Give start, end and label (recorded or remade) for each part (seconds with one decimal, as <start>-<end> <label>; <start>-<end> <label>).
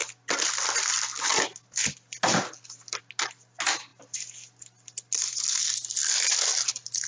0.0-7.1 recorded